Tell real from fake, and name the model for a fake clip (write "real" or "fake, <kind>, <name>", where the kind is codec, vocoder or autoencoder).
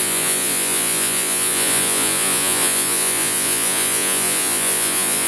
fake, vocoder, Vocos